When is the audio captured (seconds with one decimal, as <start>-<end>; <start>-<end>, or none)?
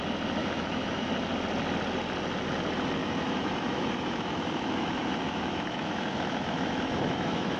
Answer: 0.0-0.4; 1.1-3.0